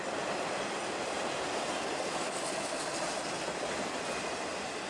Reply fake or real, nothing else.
real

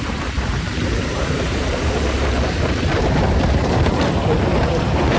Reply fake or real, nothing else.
fake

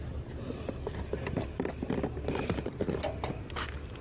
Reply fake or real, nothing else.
real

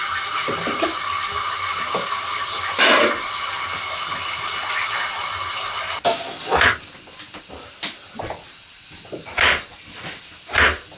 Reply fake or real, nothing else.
real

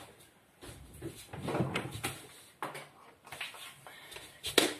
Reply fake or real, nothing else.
real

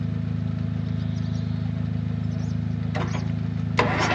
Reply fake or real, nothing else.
real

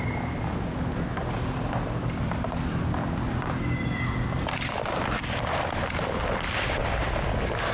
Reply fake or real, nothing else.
real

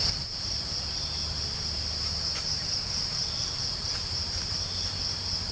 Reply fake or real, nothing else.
fake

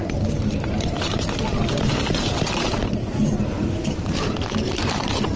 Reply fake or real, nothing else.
fake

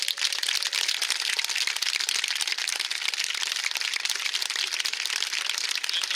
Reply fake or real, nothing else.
real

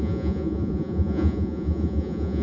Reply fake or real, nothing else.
fake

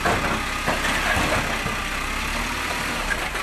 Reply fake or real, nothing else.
real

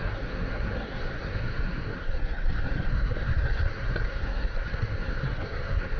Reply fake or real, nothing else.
fake